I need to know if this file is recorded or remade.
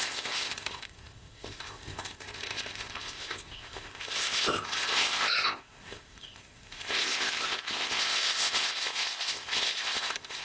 remade